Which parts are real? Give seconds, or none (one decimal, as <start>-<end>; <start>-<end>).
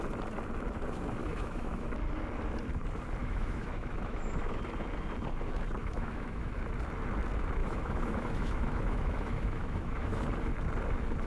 0.0-1.2; 1.9-3.2; 4.6-5.8; 6.5-7.6; 10.2-11.3